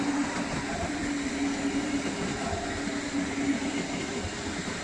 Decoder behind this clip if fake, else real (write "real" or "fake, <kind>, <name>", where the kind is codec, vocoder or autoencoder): real